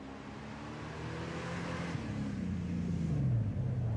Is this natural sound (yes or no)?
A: yes